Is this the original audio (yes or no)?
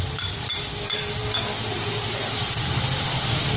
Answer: yes